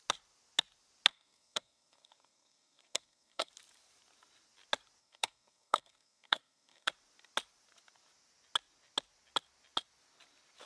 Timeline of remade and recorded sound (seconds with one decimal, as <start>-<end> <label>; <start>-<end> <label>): 0.0-1.1 recorded; 1.1-3.5 remade; 3.5-5.0 recorded; 5.0-6.9 remade; 6.9-10.7 recorded